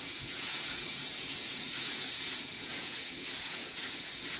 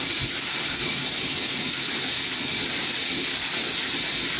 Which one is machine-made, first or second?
first